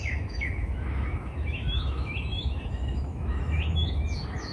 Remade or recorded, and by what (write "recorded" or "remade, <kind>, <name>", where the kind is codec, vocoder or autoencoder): remade, autoencoder, DAC-VAE